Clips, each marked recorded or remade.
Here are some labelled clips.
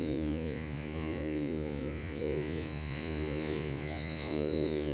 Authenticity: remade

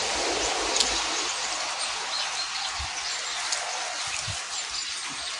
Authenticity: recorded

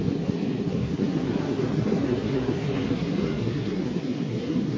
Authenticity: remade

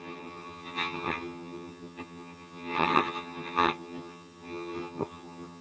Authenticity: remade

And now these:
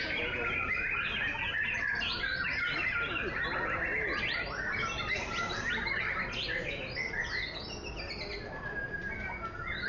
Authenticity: recorded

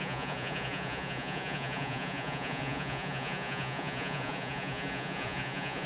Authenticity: remade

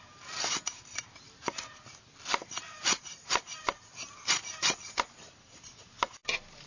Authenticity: recorded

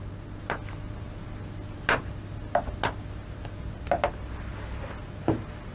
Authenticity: recorded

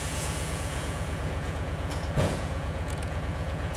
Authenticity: remade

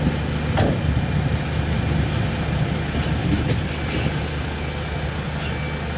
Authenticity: recorded